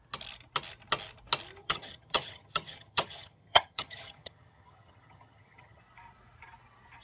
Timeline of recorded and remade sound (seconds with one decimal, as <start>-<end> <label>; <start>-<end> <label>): 0.0-1.6 recorded; 1.6-5.8 remade; 5.8-7.0 recorded